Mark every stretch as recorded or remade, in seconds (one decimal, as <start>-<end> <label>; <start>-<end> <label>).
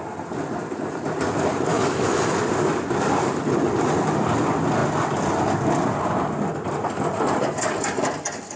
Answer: 0.0-1.7 recorded; 1.7-2.4 remade; 2.4-8.6 recorded